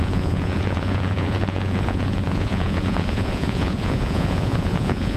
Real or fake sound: fake